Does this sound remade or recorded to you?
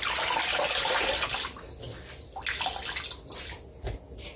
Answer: recorded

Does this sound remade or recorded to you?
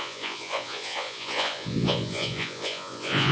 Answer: remade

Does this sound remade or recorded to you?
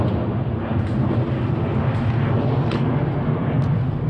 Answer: recorded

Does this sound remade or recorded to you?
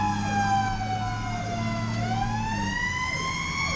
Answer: recorded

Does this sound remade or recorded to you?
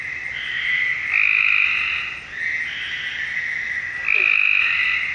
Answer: recorded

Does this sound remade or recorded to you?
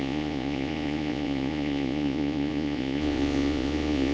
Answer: remade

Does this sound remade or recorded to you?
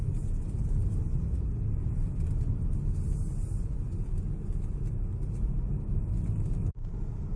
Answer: recorded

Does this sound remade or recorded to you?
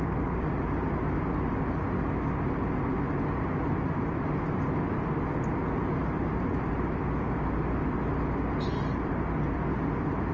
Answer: recorded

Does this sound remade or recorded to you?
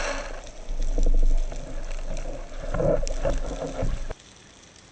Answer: recorded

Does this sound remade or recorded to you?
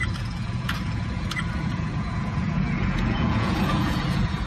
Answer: remade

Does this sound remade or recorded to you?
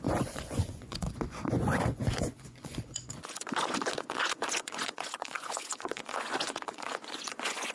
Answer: remade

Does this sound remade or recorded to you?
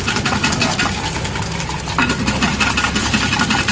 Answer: recorded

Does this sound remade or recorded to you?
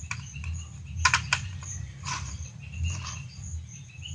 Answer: recorded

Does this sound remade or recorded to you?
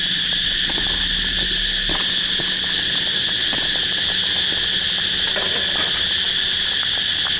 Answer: recorded